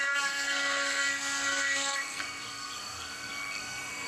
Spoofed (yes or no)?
yes